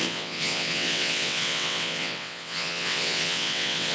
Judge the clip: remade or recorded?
remade